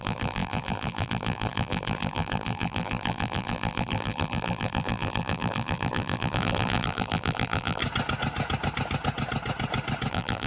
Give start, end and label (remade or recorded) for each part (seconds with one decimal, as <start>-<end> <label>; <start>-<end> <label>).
0.0-7.8 remade; 7.8-10.1 recorded; 10.1-10.5 remade